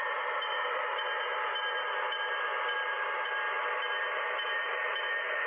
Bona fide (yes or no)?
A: no